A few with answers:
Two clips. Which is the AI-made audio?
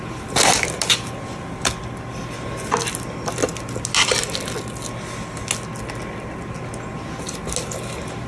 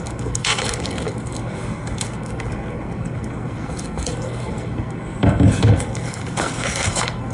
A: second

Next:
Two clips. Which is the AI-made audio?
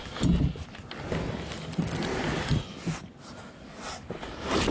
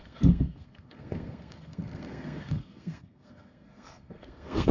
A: second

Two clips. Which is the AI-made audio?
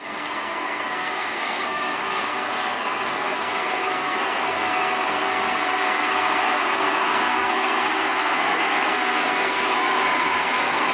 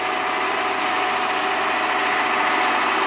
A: first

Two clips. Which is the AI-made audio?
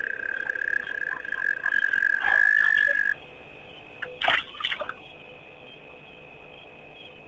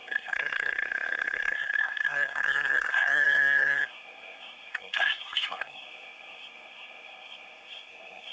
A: second